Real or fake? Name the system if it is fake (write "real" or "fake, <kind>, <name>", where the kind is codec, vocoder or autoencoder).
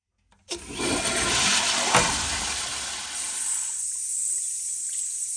real